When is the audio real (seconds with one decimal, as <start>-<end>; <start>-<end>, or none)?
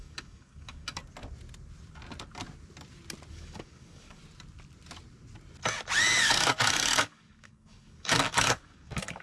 1.0-3.3; 4.2-6.2